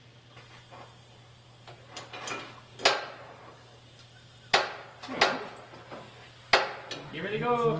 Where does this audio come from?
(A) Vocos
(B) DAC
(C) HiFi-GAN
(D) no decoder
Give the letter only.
D